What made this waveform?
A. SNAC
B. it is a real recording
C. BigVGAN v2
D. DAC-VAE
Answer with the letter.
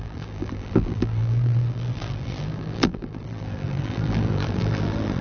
C